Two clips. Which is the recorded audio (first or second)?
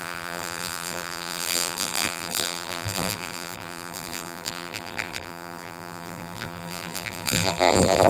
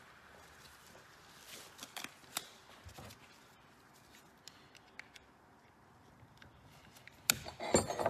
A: second